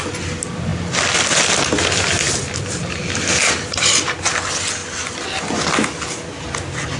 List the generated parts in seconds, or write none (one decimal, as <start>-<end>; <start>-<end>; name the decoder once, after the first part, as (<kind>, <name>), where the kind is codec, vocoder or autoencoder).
none